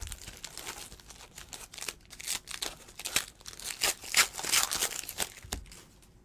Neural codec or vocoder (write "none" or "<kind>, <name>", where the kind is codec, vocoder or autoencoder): none